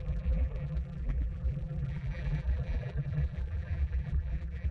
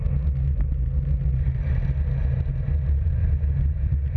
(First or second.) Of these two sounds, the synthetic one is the first